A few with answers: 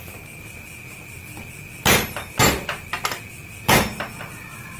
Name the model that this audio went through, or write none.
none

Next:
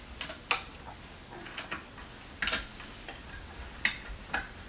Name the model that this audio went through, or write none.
none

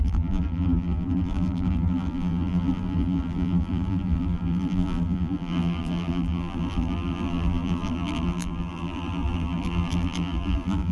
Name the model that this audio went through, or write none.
vocoder, BigVGAN v2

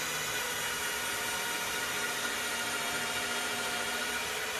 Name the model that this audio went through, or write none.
vocoder, BigVGAN v2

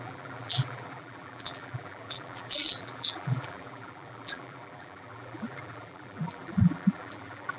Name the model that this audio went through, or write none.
vocoder, BigVGAN v2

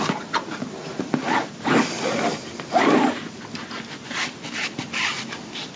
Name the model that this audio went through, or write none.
none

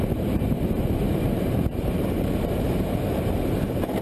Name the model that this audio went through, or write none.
vocoder, BigVGAN v2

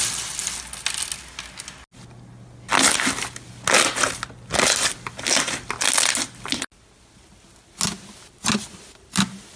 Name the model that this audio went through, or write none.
none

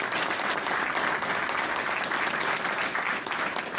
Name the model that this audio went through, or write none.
none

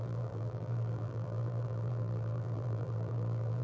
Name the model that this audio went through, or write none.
vocoder, BigVGAN v2